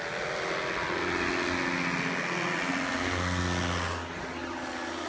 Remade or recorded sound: recorded